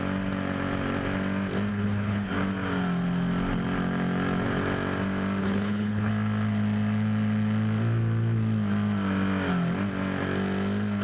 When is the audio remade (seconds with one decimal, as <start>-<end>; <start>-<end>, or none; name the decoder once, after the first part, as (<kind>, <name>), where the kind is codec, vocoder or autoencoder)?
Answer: 1.7-2.3 (codec, HILCodec); 5.4-6.1